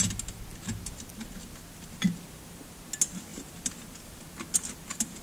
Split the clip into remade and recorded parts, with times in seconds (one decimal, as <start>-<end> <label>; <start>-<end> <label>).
0.0-5.2 recorded